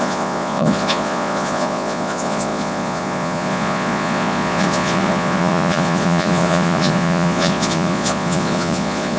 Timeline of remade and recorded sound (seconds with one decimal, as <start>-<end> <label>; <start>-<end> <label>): 0.0-9.2 remade